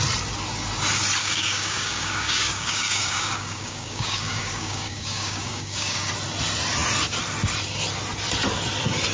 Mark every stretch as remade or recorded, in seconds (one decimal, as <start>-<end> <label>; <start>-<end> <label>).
0.0-1.2 recorded; 1.2-6.1 remade; 6.1-9.1 recorded